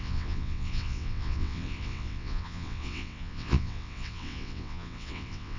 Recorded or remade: remade